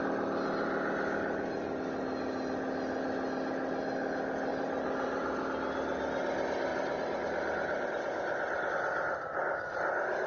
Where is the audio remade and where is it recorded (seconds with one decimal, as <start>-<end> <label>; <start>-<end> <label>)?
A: 0.0-4.5 recorded; 4.5-5.4 remade; 5.4-6.7 recorded; 6.7-8.7 remade; 8.7-10.3 recorded